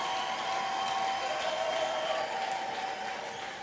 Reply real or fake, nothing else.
real